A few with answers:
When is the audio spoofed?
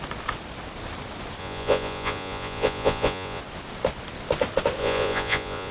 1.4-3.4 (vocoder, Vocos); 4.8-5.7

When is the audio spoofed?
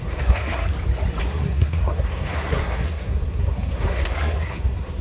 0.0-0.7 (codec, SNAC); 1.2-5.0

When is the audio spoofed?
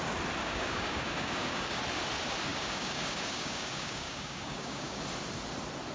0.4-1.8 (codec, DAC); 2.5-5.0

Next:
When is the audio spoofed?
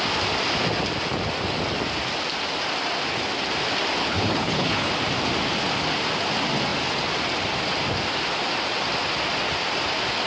4.0-4.9 (codec, HILCodec)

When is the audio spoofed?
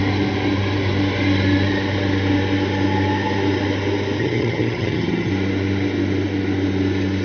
4.2-5.3 (vocoder, HiFi-GAN)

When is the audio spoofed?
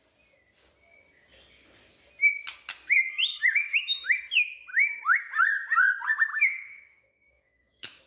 3.3-4.2 (autoencoder, DAC-VAE); 4.7-5.2; 6.3-8.1